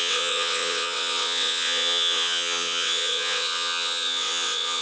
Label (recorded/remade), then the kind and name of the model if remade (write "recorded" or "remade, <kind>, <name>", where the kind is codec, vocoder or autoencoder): remade, vocoder, WaveNeXt